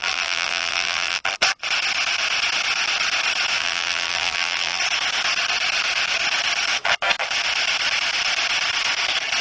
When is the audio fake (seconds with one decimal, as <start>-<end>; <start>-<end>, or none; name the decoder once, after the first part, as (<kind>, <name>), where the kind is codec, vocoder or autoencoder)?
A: 0.0-1.2 (vocoder, BigVGAN v2); 3.6-4.8